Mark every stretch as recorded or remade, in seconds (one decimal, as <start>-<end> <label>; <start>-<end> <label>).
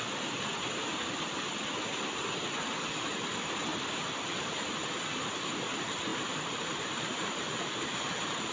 0.0-6.1 recorded; 6.1-8.5 remade